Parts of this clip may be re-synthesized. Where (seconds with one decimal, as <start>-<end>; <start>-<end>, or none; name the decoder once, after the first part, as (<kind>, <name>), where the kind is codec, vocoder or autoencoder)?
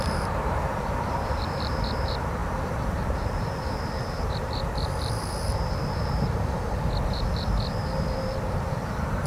0.0-9.3 (vocoder, BigVGAN v2)